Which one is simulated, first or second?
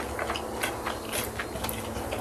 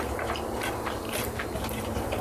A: second